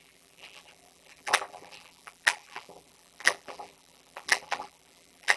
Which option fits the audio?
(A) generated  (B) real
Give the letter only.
A